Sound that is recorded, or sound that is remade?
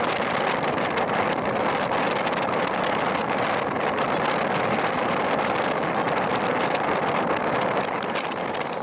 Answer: recorded